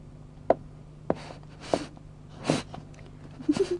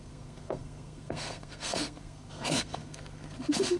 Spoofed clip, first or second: second